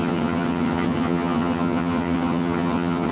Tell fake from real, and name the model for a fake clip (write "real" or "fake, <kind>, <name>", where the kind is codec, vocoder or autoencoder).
fake, vocoder, HiFi-GAN